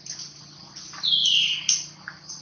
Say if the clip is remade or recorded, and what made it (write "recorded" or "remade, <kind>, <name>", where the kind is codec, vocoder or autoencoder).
recorded